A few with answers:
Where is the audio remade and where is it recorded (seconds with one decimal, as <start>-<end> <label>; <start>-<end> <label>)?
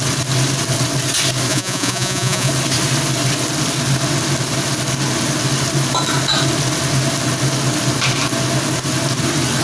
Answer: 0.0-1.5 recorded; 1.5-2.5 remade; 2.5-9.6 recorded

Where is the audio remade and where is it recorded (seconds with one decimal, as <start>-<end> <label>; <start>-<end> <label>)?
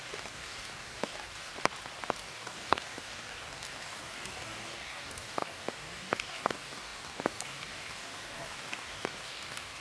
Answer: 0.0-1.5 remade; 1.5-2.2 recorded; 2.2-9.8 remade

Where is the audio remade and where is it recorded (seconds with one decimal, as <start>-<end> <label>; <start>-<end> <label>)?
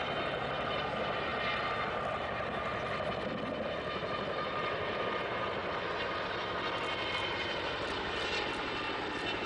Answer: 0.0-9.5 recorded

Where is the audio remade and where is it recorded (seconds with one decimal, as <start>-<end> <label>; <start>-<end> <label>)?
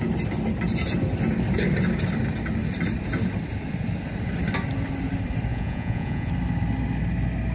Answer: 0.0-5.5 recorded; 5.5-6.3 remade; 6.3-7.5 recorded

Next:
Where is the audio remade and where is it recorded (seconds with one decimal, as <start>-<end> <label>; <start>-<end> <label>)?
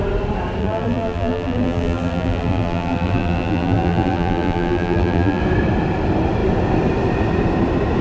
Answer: 0.0-0.6 recorded; 0.6-5.4 remade; 5.4-8.0 recorded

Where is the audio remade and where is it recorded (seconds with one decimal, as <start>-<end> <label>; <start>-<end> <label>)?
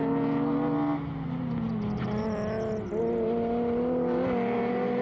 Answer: 0.0-5.0 recorded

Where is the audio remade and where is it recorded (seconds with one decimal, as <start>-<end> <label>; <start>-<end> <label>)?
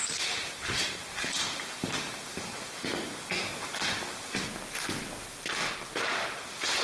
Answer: 0.0-2.9 remade; 2.9-6.8 recorded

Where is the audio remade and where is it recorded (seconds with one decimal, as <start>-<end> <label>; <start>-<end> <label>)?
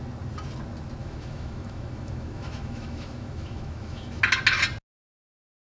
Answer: 0.0-1.0 recorded; 1.0-4.2 remade; 4.2-5.7 recorded